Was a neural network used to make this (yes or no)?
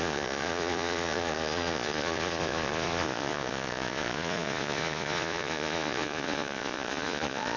yes